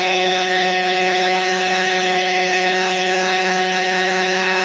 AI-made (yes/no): yes